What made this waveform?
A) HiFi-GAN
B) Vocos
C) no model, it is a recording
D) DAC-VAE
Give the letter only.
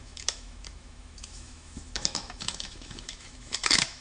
D